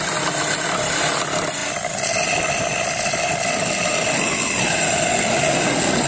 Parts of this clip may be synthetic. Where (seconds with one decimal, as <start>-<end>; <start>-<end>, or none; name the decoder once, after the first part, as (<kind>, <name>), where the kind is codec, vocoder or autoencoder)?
none